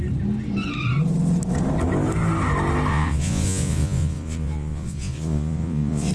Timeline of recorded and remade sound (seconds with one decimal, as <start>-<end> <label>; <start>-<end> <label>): 0.0-2.9 recorded; 2.9-6.1 remade